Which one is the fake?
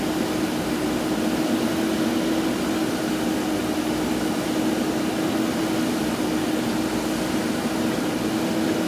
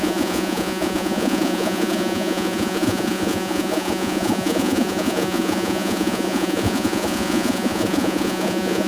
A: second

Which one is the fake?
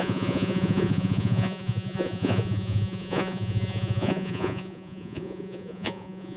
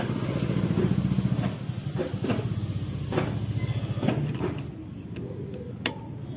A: first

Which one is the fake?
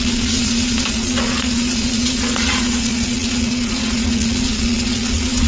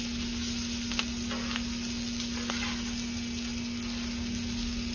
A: first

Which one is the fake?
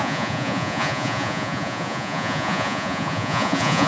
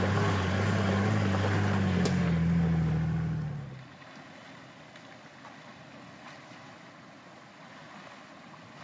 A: first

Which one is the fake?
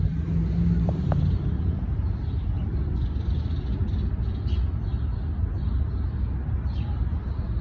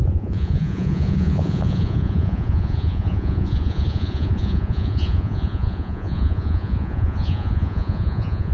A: second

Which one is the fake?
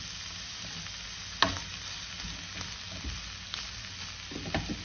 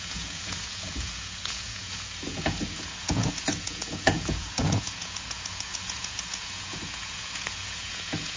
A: second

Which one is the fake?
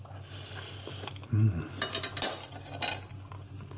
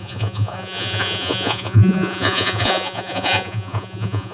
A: second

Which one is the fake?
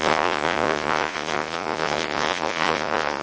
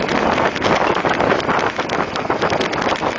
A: first